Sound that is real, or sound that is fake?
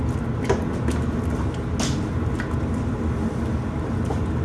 real